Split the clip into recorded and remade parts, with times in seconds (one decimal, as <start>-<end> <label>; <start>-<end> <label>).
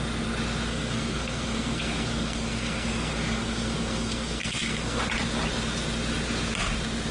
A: 0.0-0.7 recorded; 0.7-5.0 remade; 5.0-7.1 recorded